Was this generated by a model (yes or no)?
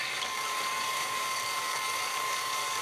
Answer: yes